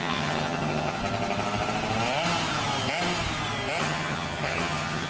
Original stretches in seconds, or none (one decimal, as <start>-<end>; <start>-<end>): 1.0-3.8